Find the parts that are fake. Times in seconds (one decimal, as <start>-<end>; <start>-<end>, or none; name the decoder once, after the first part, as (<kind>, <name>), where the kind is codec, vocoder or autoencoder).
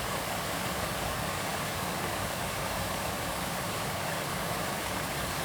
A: 0.0-5.4 (codec, DAC)